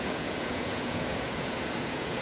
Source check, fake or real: fake